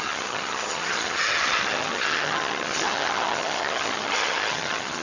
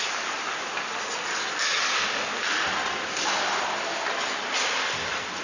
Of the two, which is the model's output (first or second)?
first